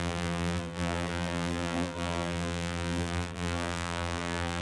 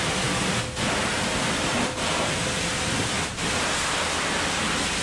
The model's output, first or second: first